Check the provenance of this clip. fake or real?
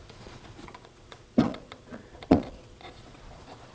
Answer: fake